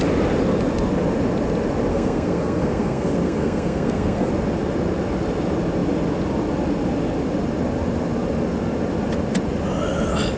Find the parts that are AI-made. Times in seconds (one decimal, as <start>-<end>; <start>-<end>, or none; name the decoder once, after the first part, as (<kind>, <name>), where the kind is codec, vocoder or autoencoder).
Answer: 1.9-4.3 (codec, SNAC)